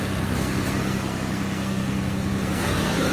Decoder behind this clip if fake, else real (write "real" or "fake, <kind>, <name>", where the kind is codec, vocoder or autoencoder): fake, codec, SNAC